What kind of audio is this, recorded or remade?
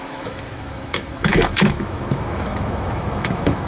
remade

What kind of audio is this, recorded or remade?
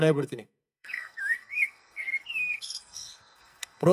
remade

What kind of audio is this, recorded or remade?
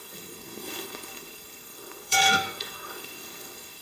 remade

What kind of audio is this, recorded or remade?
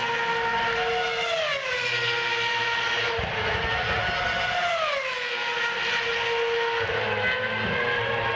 recorded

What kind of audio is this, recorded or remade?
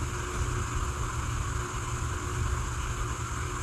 recorded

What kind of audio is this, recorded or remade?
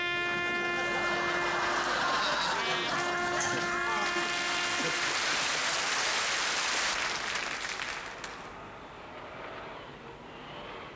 recorded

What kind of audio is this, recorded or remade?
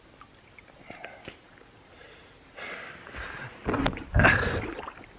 recorded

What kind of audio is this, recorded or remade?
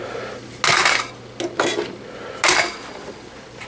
recorded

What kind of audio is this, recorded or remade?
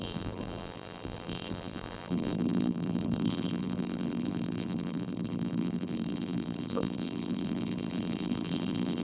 remade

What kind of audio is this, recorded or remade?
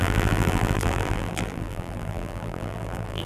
remade